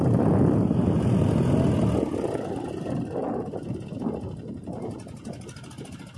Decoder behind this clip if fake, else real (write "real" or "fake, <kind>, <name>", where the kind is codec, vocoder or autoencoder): real